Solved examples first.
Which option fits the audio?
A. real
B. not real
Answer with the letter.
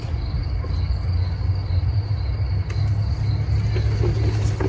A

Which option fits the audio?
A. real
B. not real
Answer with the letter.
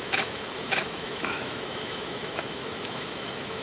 B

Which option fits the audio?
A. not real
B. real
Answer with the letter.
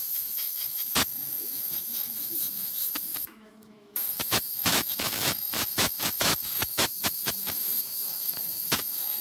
A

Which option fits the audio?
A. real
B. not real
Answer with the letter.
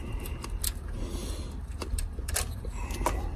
A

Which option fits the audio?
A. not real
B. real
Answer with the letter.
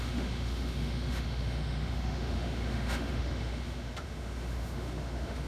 A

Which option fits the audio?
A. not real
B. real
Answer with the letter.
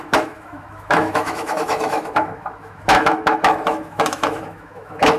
A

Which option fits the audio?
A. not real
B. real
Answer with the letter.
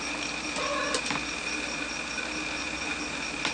B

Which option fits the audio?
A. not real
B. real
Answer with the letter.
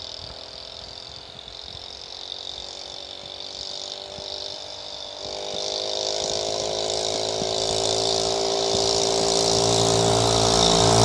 B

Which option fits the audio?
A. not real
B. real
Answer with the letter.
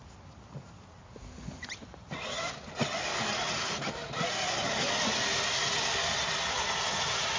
B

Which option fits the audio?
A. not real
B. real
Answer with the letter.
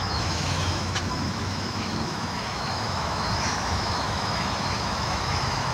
A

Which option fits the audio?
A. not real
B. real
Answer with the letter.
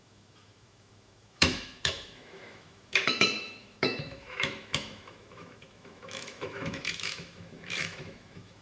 A